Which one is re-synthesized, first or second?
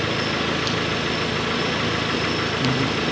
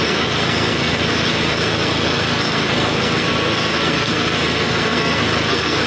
second